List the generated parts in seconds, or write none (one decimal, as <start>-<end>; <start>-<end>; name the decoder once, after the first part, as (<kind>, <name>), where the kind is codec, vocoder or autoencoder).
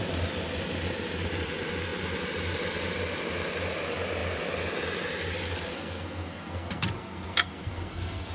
5.7-8.3 (codec, SNAC)